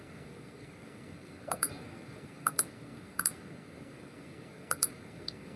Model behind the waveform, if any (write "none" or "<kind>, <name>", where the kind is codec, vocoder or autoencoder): codec, SNAC